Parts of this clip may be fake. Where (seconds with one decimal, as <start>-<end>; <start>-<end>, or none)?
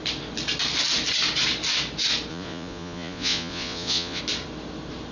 2.3-4.2